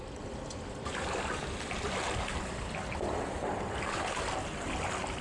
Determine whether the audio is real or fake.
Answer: real